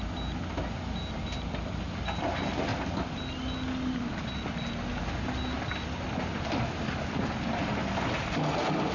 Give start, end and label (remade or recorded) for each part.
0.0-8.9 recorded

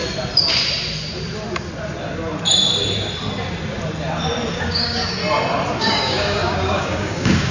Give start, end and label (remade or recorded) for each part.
0.0-4.5 recorded; 4.5-5.2 remade; 5.2-5.8 recorded; 5.8-7.5 remade

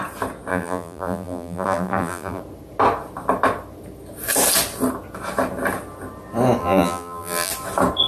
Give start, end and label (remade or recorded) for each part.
0.0-0.5 recorded; 0.5-2.4 remade; 2.4-6.6 recorded; 6.6-7.5 remade; 7.5-8.1 recorded

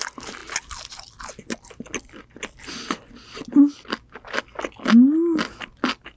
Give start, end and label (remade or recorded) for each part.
0.0-6.2 recorded

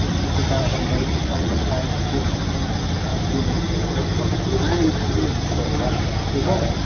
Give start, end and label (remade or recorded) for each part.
0.0-1.1 recorded; 1.1-1.7 remade; 1.7-6.9 recorded